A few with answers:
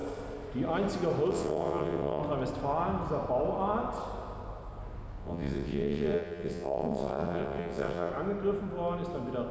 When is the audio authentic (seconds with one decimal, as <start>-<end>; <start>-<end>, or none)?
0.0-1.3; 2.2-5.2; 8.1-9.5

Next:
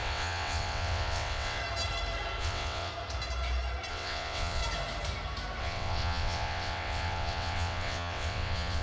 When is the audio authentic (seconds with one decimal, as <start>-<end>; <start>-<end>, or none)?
1.6-2.4; 2.9-3.9; 4.6-5.6

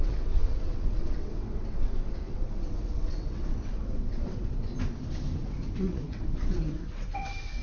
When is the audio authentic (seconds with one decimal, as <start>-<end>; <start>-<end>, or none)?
4.7-5.4

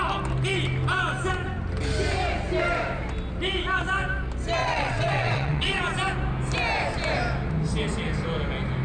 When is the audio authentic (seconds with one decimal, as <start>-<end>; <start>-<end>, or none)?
0.0-4.6; 5.8-8.8

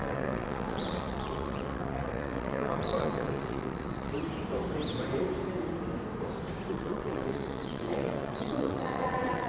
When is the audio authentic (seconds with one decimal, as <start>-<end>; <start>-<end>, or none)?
4.1-6.7

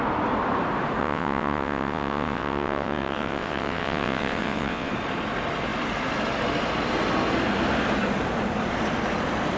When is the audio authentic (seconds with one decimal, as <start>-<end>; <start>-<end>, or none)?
0.0-1.0; 4.9-9.6

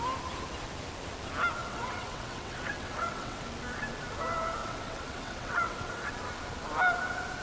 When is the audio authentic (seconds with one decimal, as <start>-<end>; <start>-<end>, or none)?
0.0-1.6; 3.4-4.6; 6.1-7.4